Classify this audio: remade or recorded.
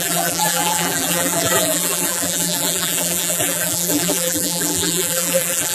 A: remade